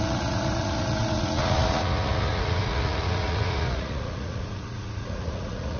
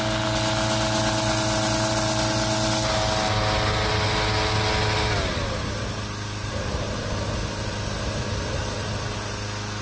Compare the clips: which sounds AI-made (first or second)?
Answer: first